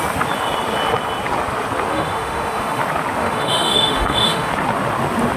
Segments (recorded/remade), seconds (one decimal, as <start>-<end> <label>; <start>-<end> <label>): 0.0-1.9 recorded; 1.9-2.8 remade; 2.8-3.2 recorded; 3.2-4.5 remade; 4.5-5.4 recorded